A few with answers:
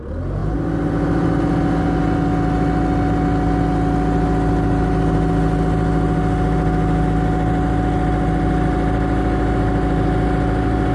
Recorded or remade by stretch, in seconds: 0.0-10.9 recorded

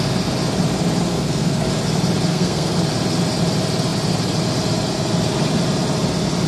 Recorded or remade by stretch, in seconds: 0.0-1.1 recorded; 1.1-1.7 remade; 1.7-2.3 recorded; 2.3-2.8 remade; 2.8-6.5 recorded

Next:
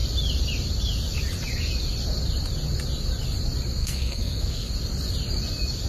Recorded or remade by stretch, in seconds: 0.0-3.8 recorded; 3.8-4.7 remade; 4.7-5.9 recorded